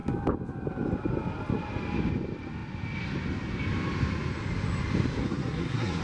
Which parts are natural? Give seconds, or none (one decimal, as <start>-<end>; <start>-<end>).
0.0-5.2